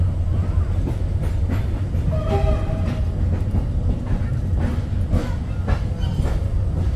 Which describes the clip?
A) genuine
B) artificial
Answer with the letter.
A